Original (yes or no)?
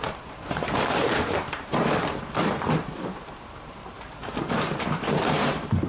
no